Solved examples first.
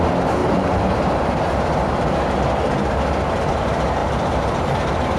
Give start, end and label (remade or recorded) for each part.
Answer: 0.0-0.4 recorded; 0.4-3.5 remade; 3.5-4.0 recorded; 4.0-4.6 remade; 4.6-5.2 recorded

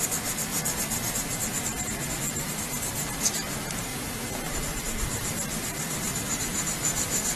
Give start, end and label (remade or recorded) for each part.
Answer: 0.0-0.5 recorded; 0.5-2.5 remade; 2.5-3.9 recorded; 3.9-4.8 remade; 4.8-5.2 recorded; 5.2-7.4 remade

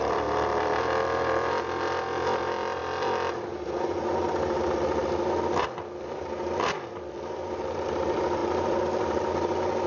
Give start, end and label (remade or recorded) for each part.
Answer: 0.0-2.8 remade; 2.8-6.0 recorded; 6.0-9.9 remade

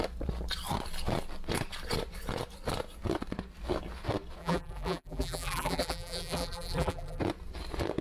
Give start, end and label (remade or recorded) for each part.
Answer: 0.0-4.4 recorded; 4.4-7.2 remade; 7.2-8.0 recorded